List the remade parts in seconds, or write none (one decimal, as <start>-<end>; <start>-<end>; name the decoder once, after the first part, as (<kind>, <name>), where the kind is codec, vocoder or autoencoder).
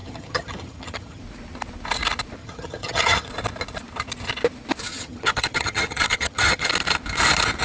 0.0-1.2 (vocoder, HiFi-GAN); 2.4-3.3; 4.9-6.7